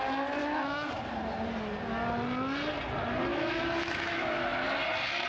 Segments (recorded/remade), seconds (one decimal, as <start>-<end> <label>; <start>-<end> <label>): 0.0-0.4 recorded; 0.4-0.9 remade; 0.9-3.3 recorded; 3.3-4.4 remade; 4.4-5.3 recorded